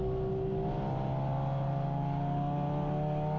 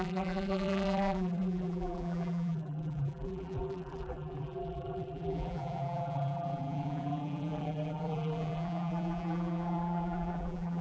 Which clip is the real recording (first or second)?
first